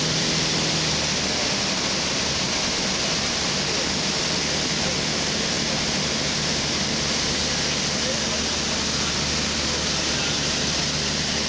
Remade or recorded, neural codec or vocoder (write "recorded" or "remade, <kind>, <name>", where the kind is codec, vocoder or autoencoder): recorded